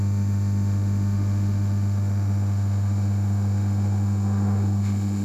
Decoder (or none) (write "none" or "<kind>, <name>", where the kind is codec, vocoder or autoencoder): autoencoder, DAC-VAE